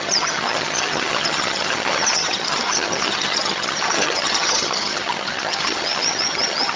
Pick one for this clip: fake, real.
fake